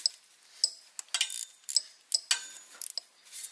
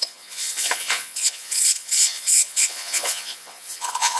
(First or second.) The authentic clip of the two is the first